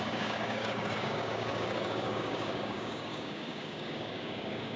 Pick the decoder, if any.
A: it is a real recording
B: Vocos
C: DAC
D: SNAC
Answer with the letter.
C